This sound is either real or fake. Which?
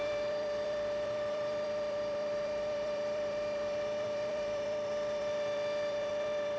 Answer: fake